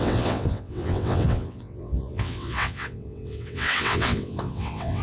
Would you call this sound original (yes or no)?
no